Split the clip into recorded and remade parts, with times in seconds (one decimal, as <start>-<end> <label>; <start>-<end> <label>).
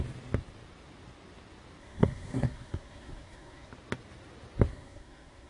0.0-1.8 recorded; 1.8-3.7 remade; 3.7-4.7 recorded; 4.7-5.5 remade